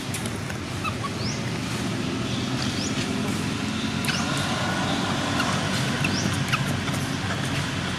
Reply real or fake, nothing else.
real